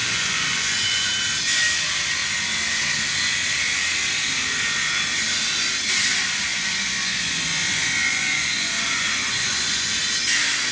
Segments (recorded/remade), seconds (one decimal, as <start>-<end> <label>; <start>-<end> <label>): 0.0-1.1 remade; 1.1-6.5 recorded; 6.5-9.9 remade; 9.9-10.7 recorded